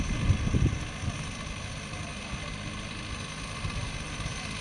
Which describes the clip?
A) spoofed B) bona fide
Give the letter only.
B